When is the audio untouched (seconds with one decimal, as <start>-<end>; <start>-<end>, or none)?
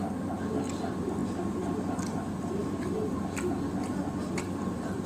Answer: 0.0-5.1